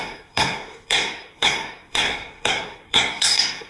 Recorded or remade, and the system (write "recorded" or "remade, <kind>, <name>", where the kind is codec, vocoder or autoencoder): remade, codec, SNAC